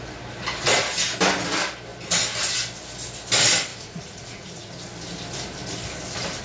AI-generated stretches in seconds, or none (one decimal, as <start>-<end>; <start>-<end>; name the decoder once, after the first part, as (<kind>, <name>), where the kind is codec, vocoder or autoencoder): 3.7-4.7 (vocoder, Vocos)